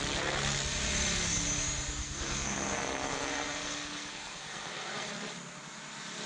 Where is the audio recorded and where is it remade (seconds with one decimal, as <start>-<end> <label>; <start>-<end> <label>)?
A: 0.0-2.0 recorded; 2.0-5.1 remade; 5.1-6.3 recorded